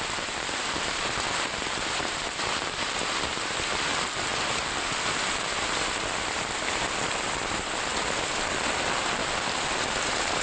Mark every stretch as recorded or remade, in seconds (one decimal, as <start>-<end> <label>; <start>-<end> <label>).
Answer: 0.0-9.2 remade; 9.2-10.0 recorded; 10.0-10.4 remade